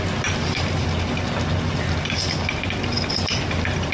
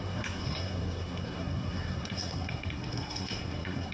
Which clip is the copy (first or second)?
second